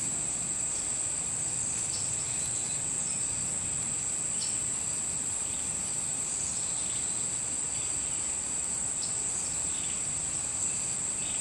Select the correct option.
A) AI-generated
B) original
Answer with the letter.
B